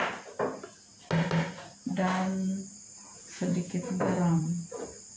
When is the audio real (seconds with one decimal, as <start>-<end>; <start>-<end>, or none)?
0.0-3.1; 4.4-5.2